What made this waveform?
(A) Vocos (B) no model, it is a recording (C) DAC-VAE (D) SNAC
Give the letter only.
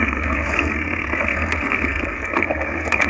D